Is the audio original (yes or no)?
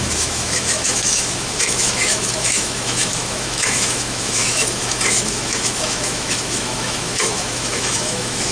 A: no